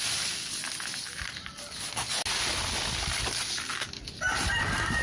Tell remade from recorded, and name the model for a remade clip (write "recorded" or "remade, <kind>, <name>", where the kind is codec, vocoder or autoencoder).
recorded